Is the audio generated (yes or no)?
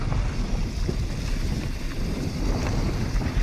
no